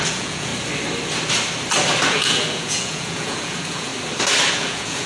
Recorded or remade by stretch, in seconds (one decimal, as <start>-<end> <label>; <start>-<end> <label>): 0.0-0.5 remade; 0.5-2.1 recorded; 2.1-3.9 remade; 3.9-4.5 recorded; 4.5-5.1 remade